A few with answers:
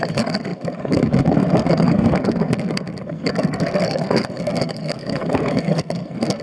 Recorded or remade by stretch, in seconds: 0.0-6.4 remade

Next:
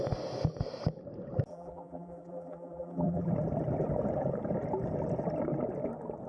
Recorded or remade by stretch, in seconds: 0.0-1.5 recorded; 1.5-3.3 remade; 3.3-6.3 recorded

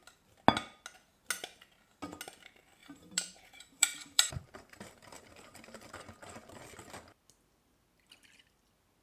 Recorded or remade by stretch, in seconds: 0.0-2.8 recorded; 2.8-5.9 remade; 5.9-9.0 recorded

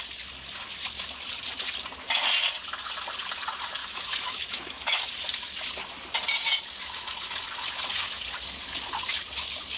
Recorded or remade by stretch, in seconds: 0.0-3.8 recorded; 3.8-5.0 remade; 5.0-9.8 recorded

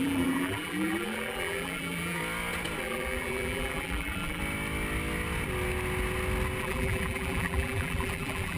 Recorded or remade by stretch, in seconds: 0.0-2.2 remade; 2.2-2.8 recorded; 2.8-4.4 remade; 4.4-6.6 recorded; 6.6-8.6 remade

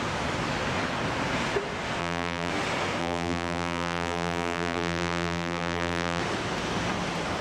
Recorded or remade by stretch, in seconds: 0.0-2.0 recorded; 2.0-2.5 remade; 2.5-3.0 recorded; 3.0-6.2 remade; 6.2-7.4 recorded

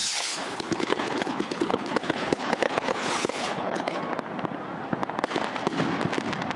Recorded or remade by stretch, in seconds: 0.0-4.0 remade; 4.0-6.6 recorded

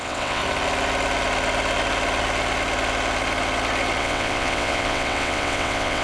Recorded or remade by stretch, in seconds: 0.0-0.4 remade; 0.4-4.0 recorded; 4.0-6.0 remade